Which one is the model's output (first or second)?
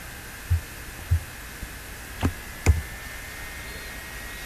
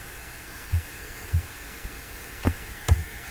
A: second